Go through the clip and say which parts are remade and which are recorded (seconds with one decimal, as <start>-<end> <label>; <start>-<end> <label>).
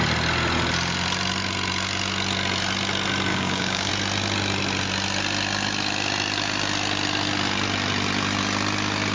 0.0-3.3 recorded; 3.3-3.9 remade; 3.9-9.1 recorded